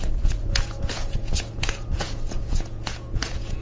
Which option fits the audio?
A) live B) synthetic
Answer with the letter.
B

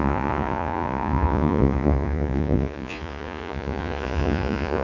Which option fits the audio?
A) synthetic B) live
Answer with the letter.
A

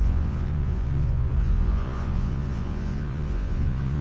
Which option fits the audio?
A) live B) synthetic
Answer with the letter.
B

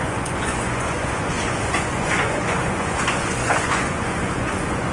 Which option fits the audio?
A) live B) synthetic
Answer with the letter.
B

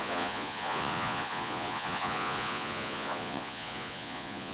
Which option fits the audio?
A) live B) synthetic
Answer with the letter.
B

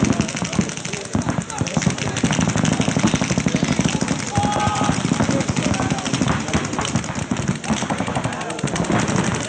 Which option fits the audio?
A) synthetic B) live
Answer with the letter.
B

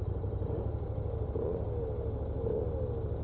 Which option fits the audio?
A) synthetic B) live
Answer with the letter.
B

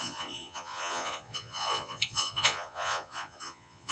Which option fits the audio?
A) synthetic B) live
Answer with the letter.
A